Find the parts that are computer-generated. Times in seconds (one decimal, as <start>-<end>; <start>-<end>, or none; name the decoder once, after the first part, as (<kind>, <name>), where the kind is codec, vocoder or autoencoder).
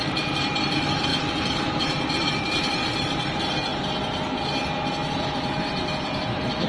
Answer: 0.0-3.7 (vocoder, BigVGAN v2); 5.6-6.7